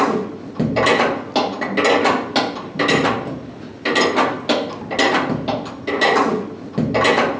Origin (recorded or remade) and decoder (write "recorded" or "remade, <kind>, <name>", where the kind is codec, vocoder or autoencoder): recorded